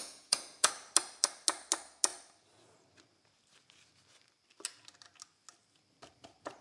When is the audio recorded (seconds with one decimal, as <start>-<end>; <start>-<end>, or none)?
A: 0.7-6.6